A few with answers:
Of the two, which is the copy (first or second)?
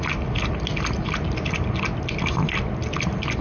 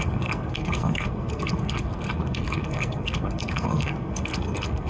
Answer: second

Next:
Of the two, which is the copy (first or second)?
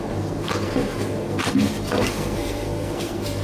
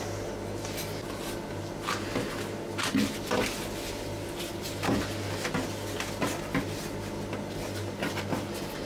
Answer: first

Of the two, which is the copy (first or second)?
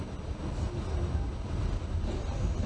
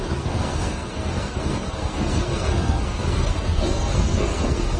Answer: second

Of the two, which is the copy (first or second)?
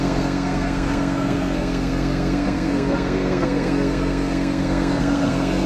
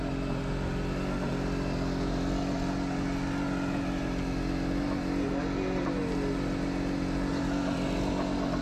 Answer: first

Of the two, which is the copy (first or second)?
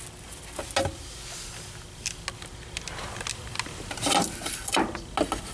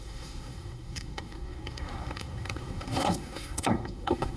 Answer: second